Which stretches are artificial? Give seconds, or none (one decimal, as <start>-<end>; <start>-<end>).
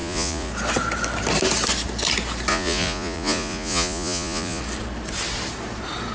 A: 0.0-0.5; 2.5-4.6